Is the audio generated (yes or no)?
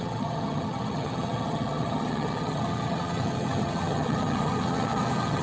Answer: yes